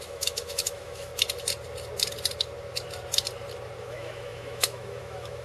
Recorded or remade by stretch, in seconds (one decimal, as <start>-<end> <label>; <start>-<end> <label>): 0.0-1.1 remade; 1.1-3.8 recorded; 3.8-5.4 remade